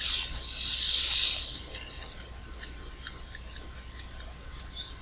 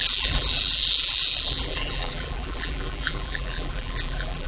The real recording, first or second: first